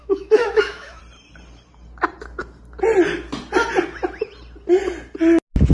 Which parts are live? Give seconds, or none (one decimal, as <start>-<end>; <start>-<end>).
1.0-5.7